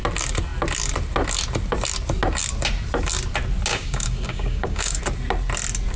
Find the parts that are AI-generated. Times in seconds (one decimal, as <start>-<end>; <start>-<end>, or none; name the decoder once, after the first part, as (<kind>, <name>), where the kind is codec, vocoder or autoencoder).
3.7-5.0 (codec, DAC)